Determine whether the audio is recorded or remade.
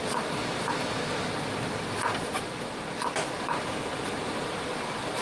remade